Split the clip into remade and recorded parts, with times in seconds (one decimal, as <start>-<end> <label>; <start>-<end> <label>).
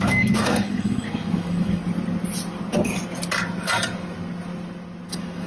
0.0-1.8 remade; 1.8-5.1 recorded; 5.1-5.5 remade